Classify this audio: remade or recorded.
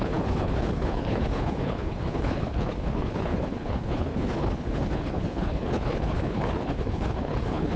remade